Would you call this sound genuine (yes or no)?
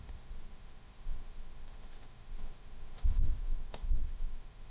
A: no